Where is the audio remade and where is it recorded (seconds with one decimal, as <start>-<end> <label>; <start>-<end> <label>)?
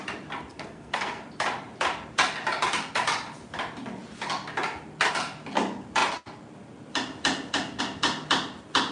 0.0-0.5 recorded; 0.5-1.2 remade; 1.2-8.9 recorded